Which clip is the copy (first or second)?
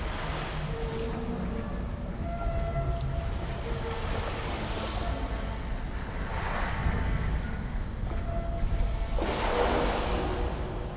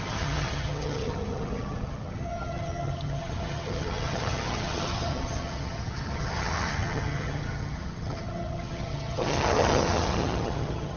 second